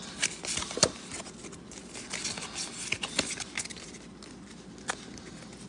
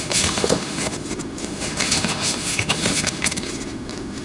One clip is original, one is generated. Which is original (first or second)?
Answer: first